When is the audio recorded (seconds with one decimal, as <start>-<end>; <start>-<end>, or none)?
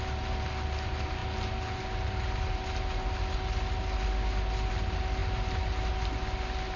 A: 0.0-6.8